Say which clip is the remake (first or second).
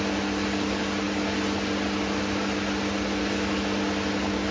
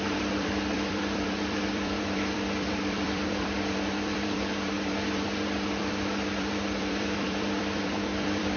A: second